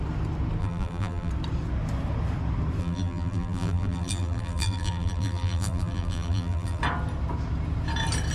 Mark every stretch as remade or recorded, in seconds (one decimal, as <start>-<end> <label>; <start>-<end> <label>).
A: 0.0-0.6 recorded; 0.6-1.3 remade; 1.3-2.8 recorded; 2.8-6.8 remade; 6.8-8.3 recorded